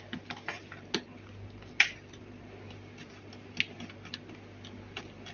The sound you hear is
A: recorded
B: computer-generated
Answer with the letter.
A